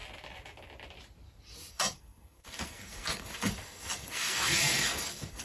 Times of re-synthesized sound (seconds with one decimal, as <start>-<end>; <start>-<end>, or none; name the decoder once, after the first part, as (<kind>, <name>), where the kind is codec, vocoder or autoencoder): 1.7-5.4 (codec, SNAC)